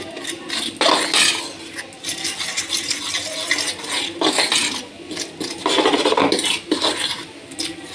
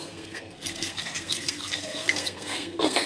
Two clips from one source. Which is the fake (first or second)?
second